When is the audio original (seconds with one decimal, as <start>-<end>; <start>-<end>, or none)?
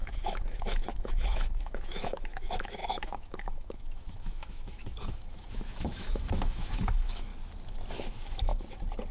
7.3-7.9; 8.5-9.1